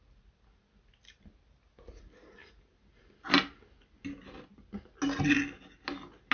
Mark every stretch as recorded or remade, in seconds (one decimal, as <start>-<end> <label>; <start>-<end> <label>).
0.0-6.3 recorded